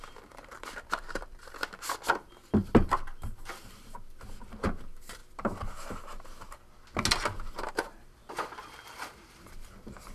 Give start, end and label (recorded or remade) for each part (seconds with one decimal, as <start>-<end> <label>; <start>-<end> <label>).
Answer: 0.0-1.4 remade; 1.4-4.4 recorded; 4.4-5.2 remade; 5.2-7.7 recorded; 7.7-10.1 remade